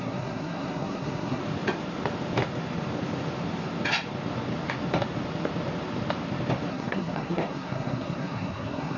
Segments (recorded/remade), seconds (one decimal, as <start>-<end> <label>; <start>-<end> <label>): 0.0-1.4 remade; 1.4-6.7 recorded; 6.7-9.0 remade

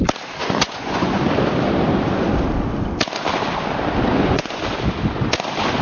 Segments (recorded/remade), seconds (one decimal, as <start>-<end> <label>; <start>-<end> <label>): 0.0-0.4 recorded; 0.4-1.2 remade; 1.2-4.1 recorded; 4.1-4.6 remade; 4.6-5.8 recorded

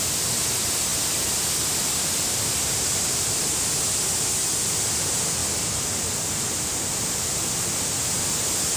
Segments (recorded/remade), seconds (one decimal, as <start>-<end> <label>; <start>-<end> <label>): 0.0-8.8 recorded

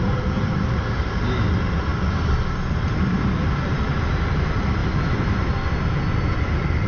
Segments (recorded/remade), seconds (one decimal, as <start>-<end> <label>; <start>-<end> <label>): 0.0-1.9 remade; 1.9-4.2 recorded; 4.2-4.8 remade; 4.8-6.4 recorded; 6.4-6.9 remade